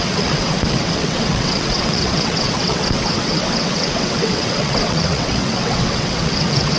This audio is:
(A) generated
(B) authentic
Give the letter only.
A